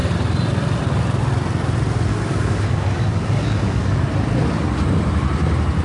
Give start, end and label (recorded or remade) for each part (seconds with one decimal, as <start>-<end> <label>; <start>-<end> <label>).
0.0-2.1 recorded; 2.1-4.0 remade; 4.0-5.8 recorded